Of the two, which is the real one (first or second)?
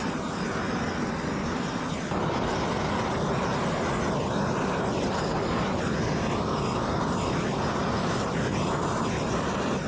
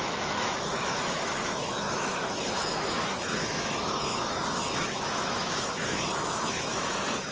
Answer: first